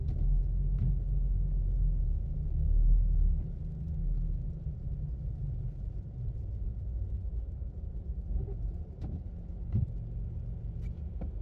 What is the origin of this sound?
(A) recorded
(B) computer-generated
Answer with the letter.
A